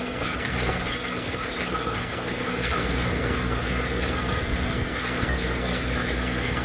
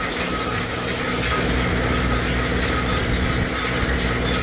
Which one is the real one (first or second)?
second